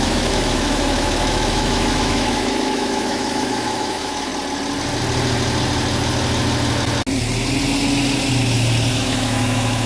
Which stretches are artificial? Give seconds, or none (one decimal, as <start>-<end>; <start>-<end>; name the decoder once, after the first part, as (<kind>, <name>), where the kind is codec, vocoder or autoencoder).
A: 0.0-4.3 (autoencoder, DAC-VAE); 8.9-9.9